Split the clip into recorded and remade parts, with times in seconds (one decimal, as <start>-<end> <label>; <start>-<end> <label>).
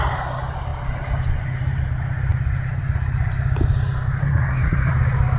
0.0-4.2 recorded; 4.2-4.9 remade; 4.9-5.4 recorded